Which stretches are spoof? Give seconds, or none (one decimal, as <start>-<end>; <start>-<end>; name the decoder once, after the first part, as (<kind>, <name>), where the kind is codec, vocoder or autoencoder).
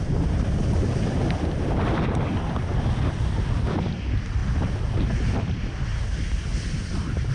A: none